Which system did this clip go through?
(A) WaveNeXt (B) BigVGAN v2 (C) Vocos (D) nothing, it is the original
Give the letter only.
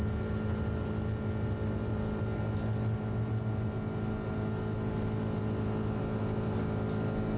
D